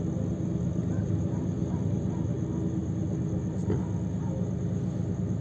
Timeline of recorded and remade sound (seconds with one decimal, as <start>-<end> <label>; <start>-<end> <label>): 0.0-2.8 remade; 2.8-5.4 recorded